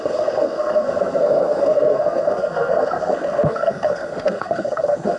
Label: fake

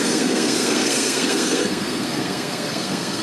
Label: fake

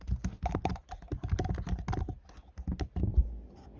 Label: real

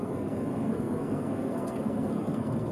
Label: fake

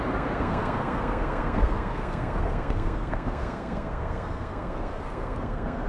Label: fake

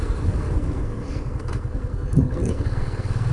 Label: fake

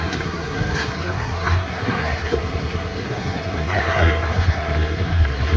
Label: fake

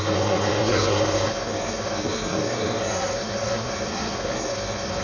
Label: fake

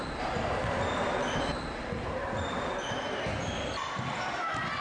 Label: real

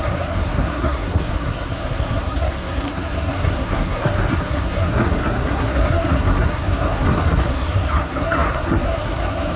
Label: fake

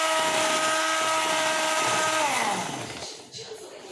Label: real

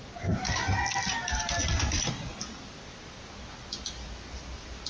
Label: real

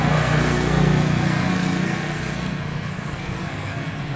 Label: fake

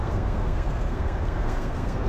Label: fake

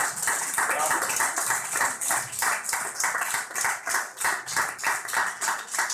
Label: real